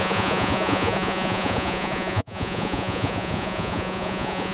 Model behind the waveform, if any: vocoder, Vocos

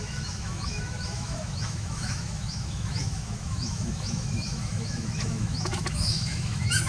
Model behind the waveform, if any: autoencoder, DAC-VAE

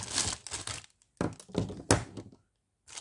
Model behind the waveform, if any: none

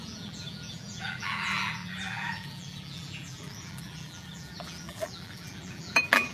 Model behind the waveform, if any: vocoder, BigVGAN v2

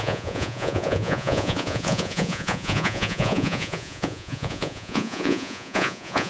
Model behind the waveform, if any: vocoder, Vocos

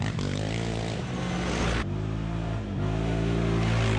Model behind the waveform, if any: none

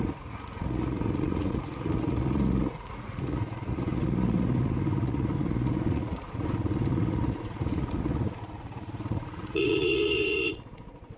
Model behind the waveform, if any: vocoder, Vocos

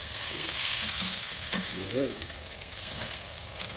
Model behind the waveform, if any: codec, SNAC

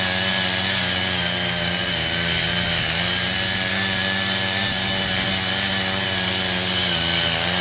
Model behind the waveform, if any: none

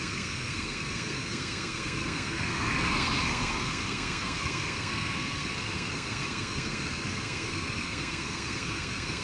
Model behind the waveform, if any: codec, SNAC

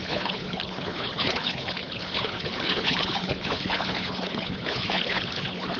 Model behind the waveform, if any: codec, HILCodec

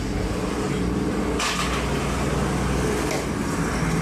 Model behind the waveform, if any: none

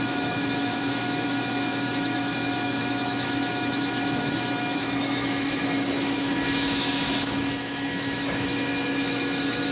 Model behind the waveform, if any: autoencoder, DAC-VAE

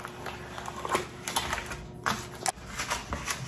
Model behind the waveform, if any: none